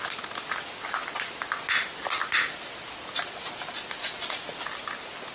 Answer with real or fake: real